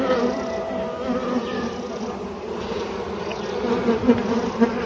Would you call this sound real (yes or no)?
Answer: yes